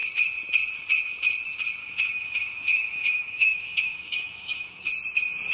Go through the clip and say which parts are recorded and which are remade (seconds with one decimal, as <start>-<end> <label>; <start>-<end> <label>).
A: 0.0-1.8 recorded; 1.8-4.9 remade; 4.9-5.5 recorded